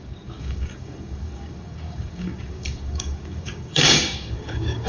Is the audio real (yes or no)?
no